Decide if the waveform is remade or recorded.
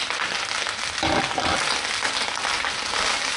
recorded